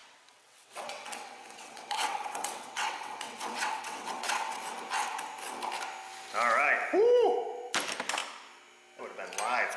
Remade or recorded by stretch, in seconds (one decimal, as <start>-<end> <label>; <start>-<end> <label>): 0.0-4.6 remade; 4.6-9.8 recorded